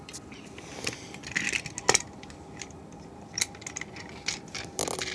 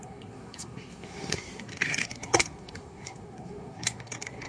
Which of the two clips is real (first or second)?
first